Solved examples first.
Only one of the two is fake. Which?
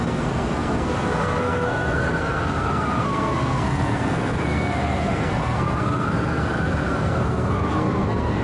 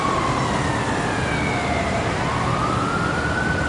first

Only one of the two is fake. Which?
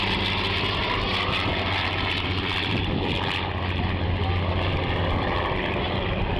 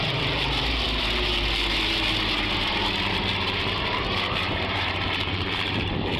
second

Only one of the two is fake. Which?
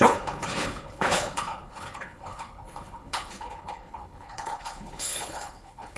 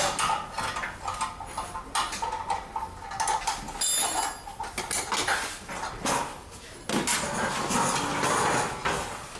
first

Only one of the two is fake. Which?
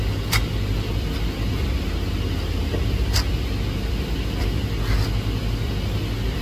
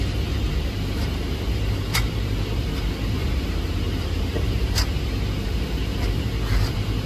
second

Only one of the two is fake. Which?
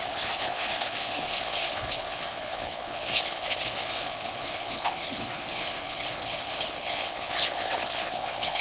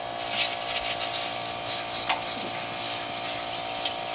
first